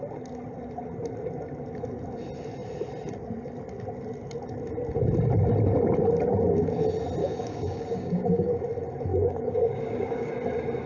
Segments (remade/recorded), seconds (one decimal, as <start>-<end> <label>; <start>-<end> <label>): 0.0-7.2 recorded; 7.2-8.6 remade; 8.6-9.1 recorded; 9.1-10.3 remade; 10.3-10.9 recorded